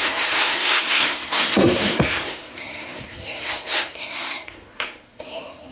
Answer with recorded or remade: remade